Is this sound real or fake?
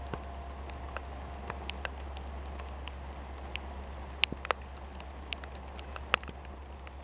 real